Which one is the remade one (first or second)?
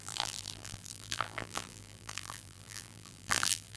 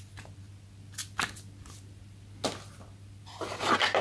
first